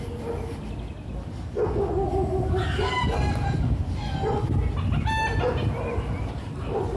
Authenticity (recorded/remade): recorded